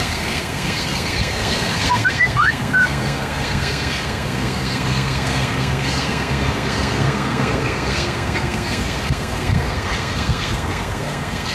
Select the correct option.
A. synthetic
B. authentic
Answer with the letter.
A